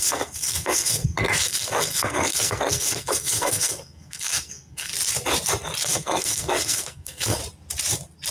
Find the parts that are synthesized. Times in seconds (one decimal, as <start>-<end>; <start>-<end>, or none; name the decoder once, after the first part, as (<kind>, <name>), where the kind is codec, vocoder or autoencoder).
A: 0.0-4.9 (codec, SNAC); 5.8-7.4